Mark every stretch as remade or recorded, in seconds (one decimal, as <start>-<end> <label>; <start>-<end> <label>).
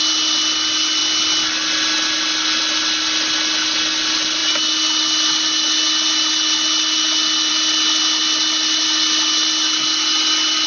0.0-10.7 recorded